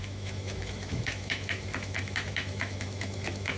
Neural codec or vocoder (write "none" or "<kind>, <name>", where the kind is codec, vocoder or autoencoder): autoencoder, DAC-VAE